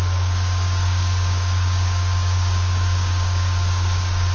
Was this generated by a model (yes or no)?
yes